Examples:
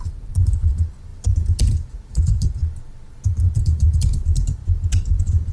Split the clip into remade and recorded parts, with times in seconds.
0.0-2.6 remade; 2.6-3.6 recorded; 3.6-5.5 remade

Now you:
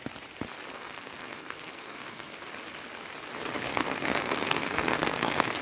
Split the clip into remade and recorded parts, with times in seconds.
0.0-0.7 recorded; 0.7-2.3 remade; 2.3-3.7 recorded; 3.7-5.6 remade